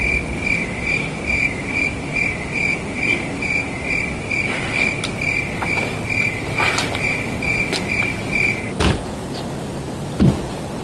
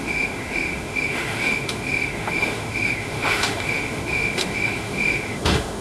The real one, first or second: first